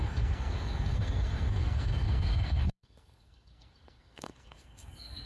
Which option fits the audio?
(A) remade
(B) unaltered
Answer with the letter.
A